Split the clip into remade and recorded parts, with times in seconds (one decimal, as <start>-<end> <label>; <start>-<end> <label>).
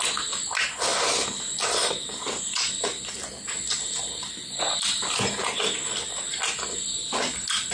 0.0-7.7 recorded